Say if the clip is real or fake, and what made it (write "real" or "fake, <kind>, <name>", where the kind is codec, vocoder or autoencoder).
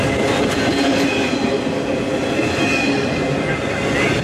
real